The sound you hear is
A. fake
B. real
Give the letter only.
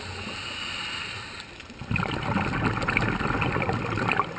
B